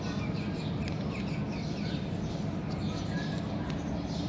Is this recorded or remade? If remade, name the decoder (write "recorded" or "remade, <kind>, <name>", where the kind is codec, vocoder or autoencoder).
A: recorded